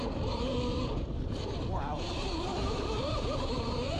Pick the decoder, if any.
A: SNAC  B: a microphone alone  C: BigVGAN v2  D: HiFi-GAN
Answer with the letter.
C